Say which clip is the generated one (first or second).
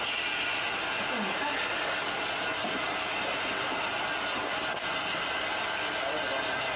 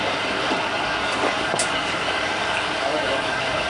second